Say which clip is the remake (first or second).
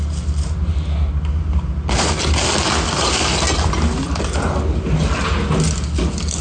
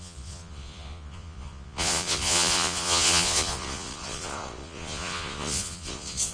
second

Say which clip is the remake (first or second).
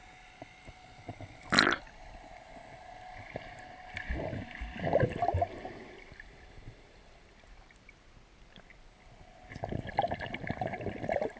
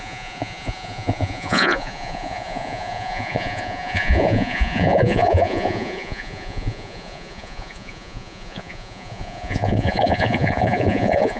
second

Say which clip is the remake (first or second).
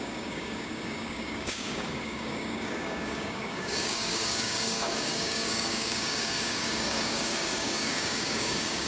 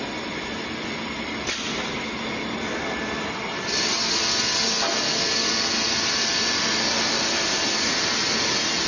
first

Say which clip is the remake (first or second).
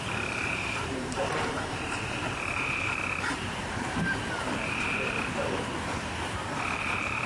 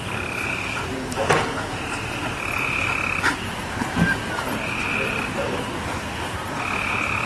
first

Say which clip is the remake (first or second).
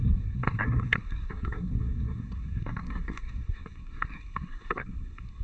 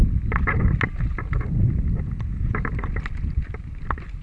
first